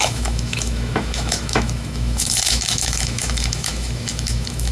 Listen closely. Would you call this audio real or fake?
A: fake